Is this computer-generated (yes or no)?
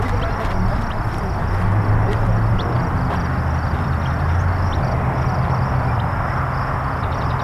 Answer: no